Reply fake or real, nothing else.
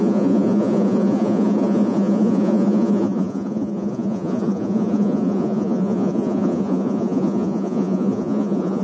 fake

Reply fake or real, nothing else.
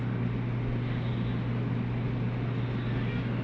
real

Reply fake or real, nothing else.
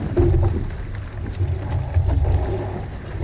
real